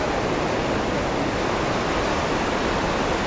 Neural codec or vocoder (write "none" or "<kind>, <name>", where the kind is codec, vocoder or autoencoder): none